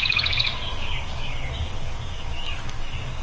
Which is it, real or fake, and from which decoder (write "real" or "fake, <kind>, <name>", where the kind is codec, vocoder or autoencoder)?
fake, codec, DAC